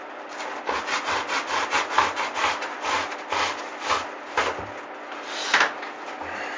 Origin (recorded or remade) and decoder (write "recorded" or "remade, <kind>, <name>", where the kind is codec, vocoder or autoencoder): recorded